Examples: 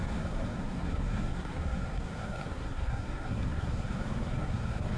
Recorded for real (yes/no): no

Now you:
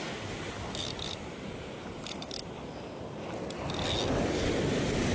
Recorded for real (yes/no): yes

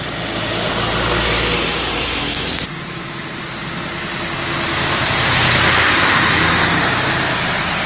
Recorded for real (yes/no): yes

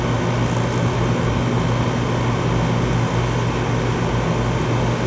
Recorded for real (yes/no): yes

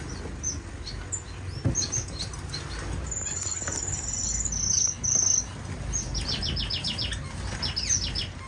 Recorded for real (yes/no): yes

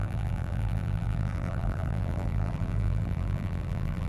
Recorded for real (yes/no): no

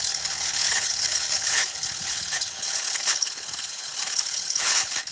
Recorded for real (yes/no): no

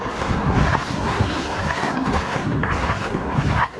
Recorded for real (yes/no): no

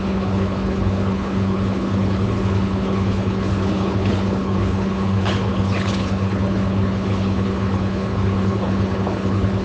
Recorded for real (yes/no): no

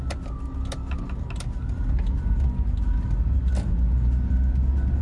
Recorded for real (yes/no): yes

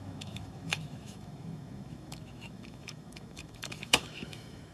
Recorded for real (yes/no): no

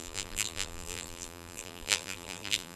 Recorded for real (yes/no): no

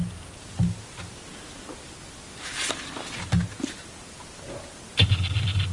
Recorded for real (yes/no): yes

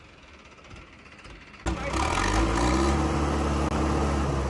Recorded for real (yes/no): yes